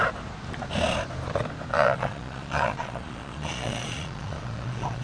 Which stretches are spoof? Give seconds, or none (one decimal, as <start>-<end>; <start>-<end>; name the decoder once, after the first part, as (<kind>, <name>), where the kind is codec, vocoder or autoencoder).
1.7-5.0 (vocoder, Vocos)